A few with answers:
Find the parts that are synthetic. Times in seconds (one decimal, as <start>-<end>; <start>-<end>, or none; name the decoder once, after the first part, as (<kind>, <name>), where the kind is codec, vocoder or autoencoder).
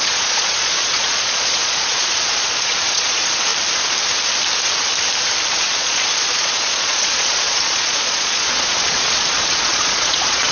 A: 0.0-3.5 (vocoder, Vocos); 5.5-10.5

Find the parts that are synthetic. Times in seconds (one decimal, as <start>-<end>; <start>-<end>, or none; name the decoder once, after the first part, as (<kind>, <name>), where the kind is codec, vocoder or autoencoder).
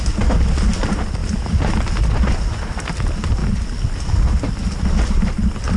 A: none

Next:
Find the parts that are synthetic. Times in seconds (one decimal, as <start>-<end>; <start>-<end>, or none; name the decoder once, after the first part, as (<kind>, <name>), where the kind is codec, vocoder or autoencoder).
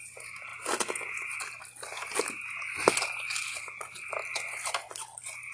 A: none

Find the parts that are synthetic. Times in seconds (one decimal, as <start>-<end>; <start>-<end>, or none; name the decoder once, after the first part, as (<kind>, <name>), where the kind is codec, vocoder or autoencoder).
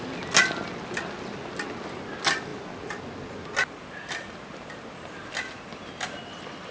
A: none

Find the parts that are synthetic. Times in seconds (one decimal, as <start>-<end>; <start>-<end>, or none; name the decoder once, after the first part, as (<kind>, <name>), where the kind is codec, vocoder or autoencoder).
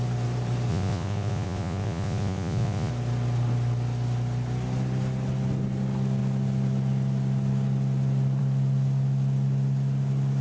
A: 0.7-2.9 (vocoder, Vocos)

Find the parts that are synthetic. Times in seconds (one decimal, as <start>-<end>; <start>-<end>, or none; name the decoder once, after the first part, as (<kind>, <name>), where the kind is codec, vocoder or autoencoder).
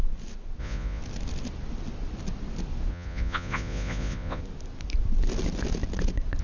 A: 0.6-1.0 (vocoder, Vocos); 2.9-4.4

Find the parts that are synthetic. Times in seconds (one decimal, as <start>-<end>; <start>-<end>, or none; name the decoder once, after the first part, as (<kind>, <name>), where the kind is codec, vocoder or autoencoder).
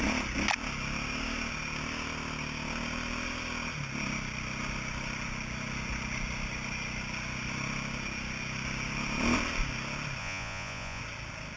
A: 10.2-11.0 (vocoder, Vocos)